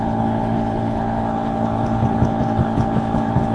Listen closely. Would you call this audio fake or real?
fake